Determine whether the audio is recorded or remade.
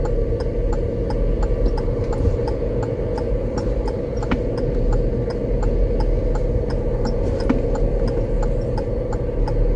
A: recorded